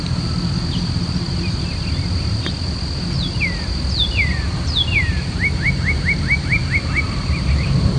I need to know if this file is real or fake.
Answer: real